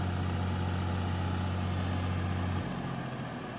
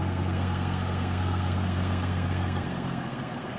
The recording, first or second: first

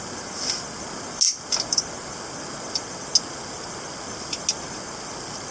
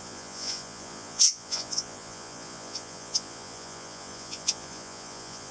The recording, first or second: first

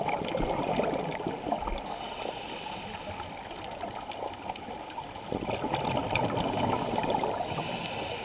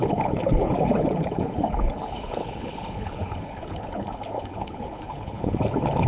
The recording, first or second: first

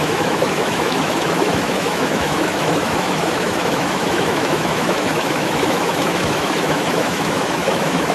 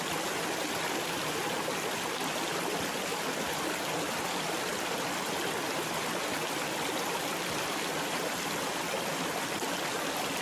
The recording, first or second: second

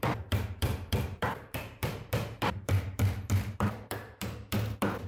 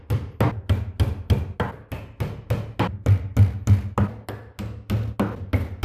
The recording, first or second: second